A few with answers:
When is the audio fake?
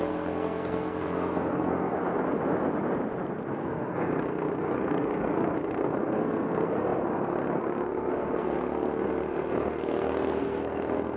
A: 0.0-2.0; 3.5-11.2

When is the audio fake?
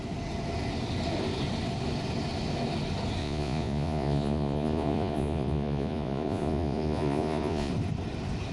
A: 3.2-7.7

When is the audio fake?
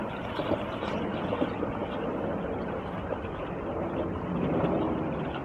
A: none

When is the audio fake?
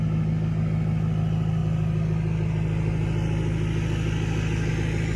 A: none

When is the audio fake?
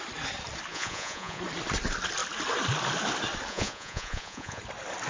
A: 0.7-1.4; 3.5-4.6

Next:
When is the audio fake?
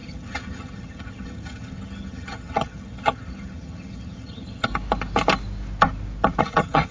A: 0.0-4.7; 6.4-6.9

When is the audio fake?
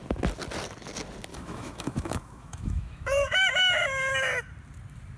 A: 1.3-4.4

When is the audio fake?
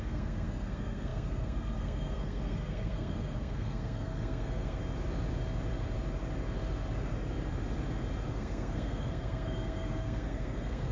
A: 0.0-4.8; 8.3-10.9